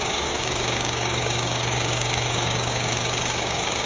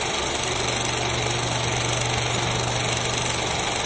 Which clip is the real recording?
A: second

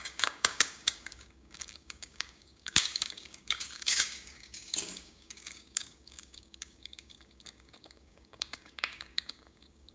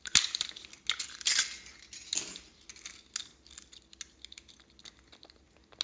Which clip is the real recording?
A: second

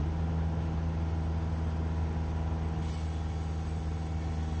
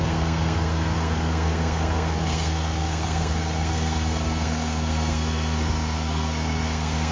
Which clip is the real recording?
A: first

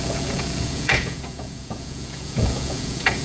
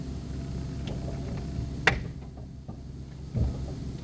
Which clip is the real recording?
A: second